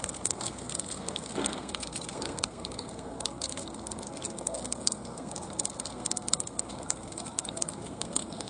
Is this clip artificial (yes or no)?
yes